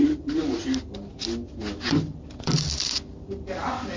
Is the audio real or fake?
fake